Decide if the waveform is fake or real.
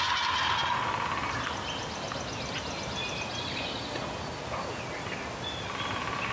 real